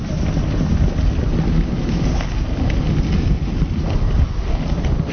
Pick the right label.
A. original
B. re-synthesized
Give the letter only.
A